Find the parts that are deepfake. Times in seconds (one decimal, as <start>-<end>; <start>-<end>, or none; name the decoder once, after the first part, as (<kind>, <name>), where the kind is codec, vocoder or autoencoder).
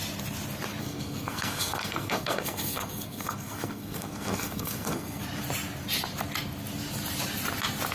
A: 0.8-5.2 (codec, SNAC)